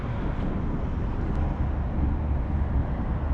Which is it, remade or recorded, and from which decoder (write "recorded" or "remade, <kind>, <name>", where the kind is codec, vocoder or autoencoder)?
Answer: recorded